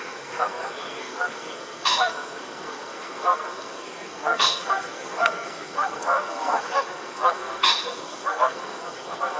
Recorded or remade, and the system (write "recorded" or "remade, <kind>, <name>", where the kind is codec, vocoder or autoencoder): remade, codec, SNAC